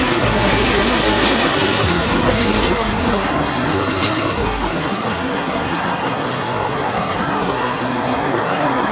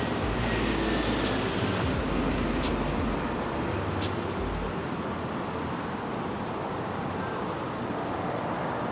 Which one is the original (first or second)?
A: second